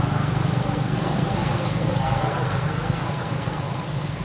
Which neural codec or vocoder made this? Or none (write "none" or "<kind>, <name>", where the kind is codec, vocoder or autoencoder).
codec, SNAC